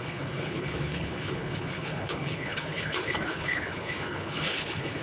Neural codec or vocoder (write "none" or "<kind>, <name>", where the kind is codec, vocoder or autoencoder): codec, HILCodec